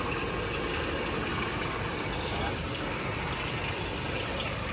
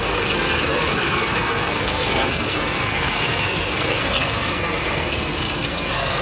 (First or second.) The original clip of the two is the first